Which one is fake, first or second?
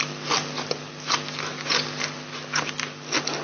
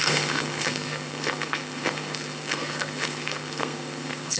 second